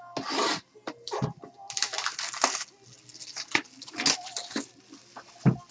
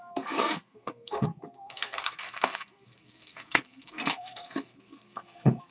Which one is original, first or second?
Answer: first